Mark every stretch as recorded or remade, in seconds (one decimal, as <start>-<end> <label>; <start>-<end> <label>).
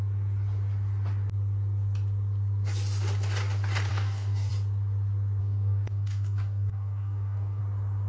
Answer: 0.0-3.9 recorded; 3.9-4.5 remade; 4.5-5.4 recorded; 5.4-7.6 remade; 7.6-8.1 recorded